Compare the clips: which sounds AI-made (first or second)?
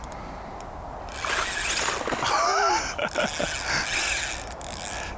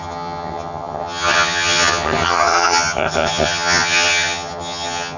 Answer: second